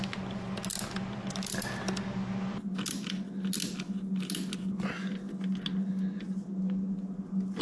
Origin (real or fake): real